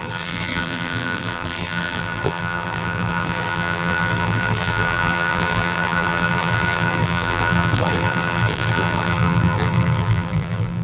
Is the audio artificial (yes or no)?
yes